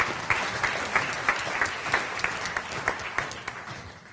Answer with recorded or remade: recorded